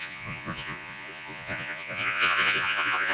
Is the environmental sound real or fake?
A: fake